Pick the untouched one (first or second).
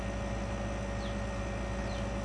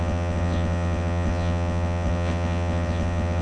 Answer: first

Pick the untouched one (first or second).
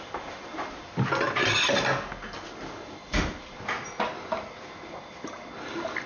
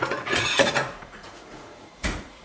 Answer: first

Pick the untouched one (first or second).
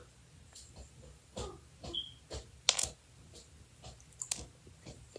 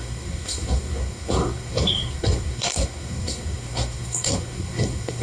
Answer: first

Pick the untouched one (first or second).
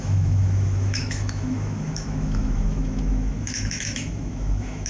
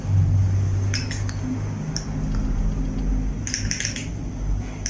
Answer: second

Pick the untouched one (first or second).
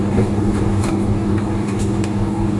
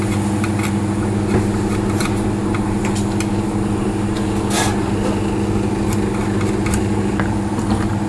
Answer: second